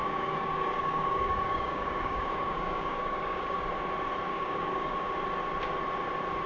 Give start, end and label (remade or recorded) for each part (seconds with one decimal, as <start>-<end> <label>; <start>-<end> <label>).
0.0-3.7 remade; 3.7-4.3 recorded; 4.3-5.1 remade; 5.1-6.5 recorded